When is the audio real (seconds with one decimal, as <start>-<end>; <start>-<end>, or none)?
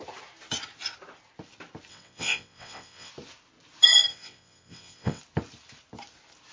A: 0.0-1.9; 3.1-4.1; 5.2-6.5